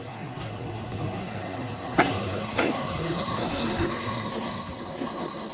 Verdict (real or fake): fake